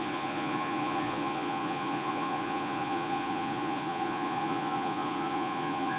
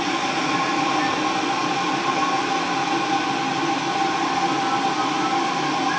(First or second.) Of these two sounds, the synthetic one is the first